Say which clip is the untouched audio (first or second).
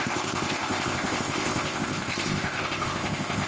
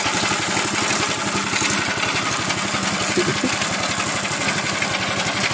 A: second